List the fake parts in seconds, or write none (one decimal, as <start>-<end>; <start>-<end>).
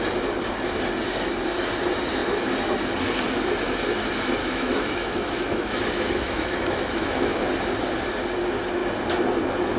4.4-7.3